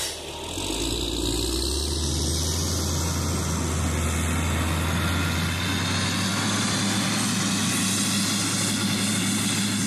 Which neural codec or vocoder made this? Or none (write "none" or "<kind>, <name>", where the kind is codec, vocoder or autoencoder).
none